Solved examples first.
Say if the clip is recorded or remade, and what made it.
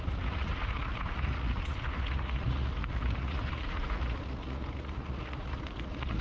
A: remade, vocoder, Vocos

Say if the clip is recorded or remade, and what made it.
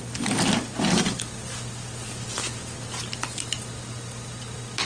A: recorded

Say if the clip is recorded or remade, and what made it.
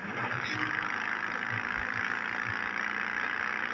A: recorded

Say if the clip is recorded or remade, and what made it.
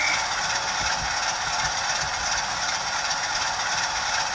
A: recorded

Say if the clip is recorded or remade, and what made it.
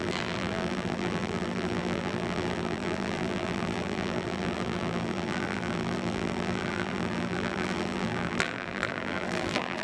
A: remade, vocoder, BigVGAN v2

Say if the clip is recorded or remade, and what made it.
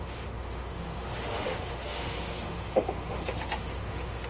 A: remade, autoencoder, DAC-VAE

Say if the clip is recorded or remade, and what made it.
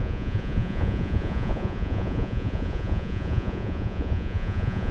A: remade, vocoder, Vocos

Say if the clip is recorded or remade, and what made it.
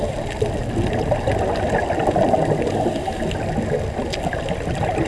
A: recorded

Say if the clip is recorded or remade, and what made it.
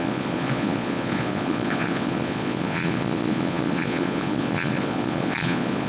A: remade, vocoder, Vocos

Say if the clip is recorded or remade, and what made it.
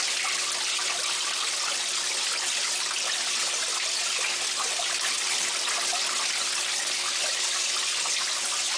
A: recorded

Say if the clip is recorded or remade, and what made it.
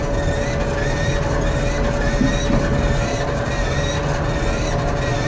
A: recorded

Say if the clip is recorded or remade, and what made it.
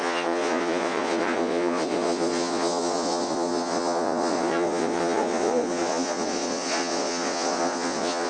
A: remade, vocoder, Vocos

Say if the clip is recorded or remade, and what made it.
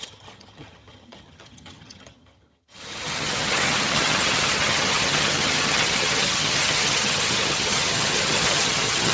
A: remade, vocoder, HiFi-GAN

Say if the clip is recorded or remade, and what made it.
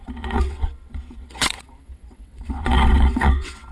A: remade, vocoder, WaveNeXt